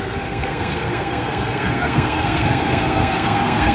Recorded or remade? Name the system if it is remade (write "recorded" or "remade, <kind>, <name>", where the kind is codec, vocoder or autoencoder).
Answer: remade, codec, SNAC